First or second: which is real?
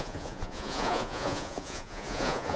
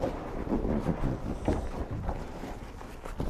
second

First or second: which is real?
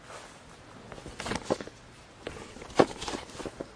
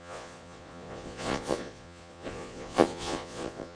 first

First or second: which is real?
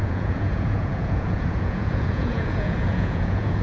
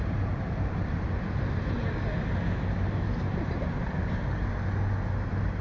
second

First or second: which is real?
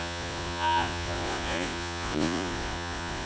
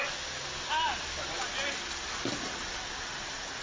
second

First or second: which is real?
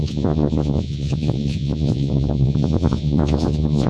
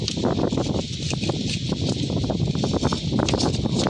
second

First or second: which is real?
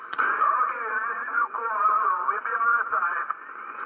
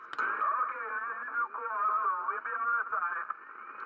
second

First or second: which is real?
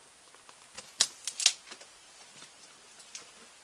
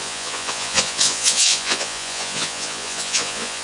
first